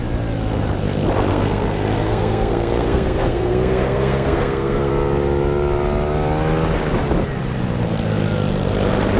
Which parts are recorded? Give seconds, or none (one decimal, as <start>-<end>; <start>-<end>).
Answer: 0.0-1.3; 4.9-9.2